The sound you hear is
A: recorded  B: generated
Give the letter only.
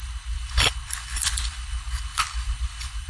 B